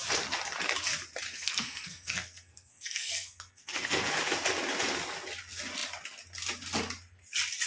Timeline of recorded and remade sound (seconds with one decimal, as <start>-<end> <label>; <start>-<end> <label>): 0.0-1.3 recorded; 1.3-4.1 remade; 4.1-7.7 recorded